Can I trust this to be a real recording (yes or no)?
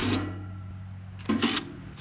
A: yes